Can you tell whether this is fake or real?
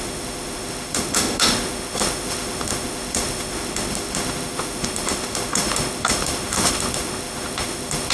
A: fake